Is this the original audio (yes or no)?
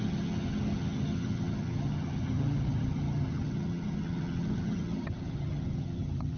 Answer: no